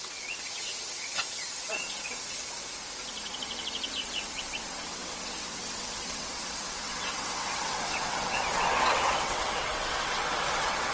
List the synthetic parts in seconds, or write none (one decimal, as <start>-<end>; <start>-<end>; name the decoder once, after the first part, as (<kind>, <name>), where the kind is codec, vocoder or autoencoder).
0.0-2.4 (vocoder, WaveNeXt); 3.3-10.9